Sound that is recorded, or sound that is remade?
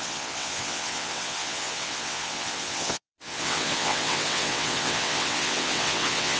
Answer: remade